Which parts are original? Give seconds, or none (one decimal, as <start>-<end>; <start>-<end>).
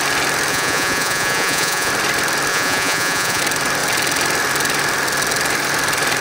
0.0-0.5; 1.9-2.5; 3.4-6.2